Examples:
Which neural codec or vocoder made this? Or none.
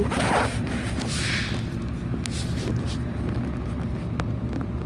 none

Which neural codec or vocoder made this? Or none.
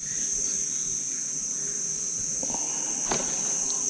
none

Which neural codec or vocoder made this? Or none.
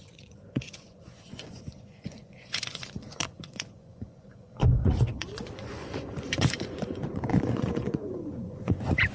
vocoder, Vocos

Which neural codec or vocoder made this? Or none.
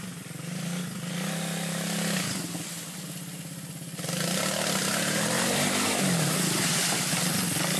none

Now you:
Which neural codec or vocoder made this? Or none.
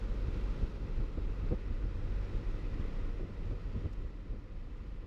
none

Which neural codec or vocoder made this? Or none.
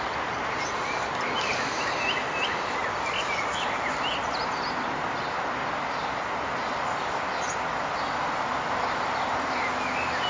none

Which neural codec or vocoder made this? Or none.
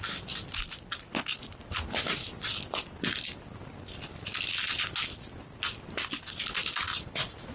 none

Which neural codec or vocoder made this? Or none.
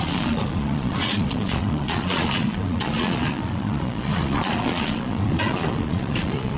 vocoder, Vocos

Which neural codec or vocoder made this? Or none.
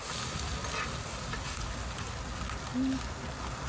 none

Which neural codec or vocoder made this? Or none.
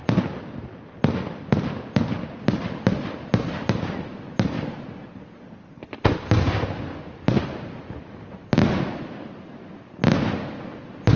none